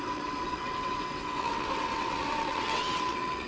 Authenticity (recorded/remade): remade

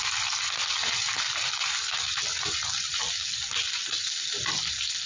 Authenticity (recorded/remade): recorded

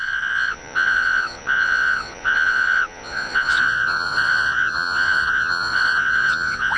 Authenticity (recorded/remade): remade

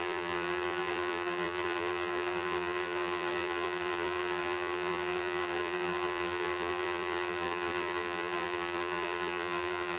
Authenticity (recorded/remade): remade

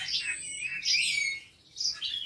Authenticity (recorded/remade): recorded